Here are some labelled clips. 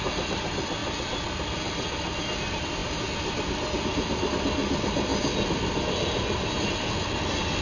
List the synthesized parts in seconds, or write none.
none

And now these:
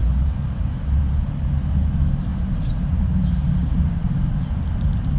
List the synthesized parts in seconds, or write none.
0.0-1.0 (vocoder, BigVGAN v2); 2.3-3.4